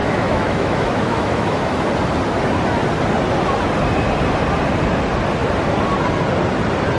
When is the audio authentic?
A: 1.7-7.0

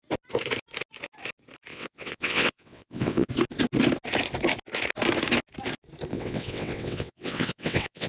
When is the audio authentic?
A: 0.0-1.7; 3.3-6.1

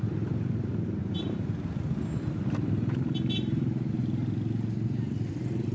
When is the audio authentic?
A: 0.0-1.0; 3.9-5.7

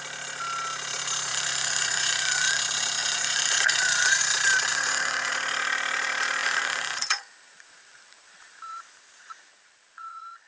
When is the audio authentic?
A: 0.0-1.3; 2.6-3.0; 4.2-4.7; 5.3-6.4